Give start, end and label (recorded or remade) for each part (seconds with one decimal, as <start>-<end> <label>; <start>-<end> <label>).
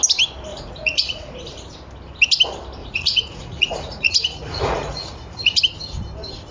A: 0.0-0.5 recorded; 0.5-1.4 remade; 1.4-2.8 recorded; 2.8-5.6 remade; 5.6-6.5 recorded